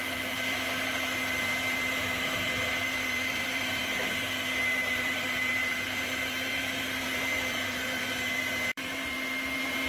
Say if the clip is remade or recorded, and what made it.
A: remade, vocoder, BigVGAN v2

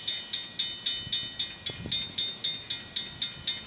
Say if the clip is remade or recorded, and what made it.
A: recorded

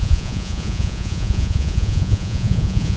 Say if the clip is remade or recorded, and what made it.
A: remade, vocoder, Vocos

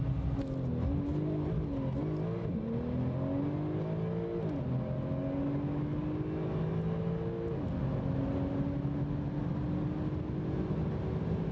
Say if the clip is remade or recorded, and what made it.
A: recorded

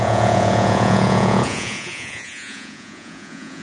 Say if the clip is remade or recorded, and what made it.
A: remade, vocoder, Vocos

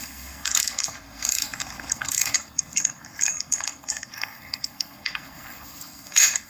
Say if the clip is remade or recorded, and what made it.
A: remade, codec, SNAC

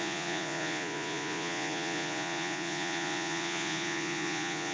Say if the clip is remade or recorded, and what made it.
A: remade, vocoder, Vocos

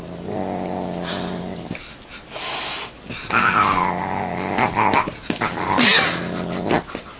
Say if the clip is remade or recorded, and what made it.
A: recorded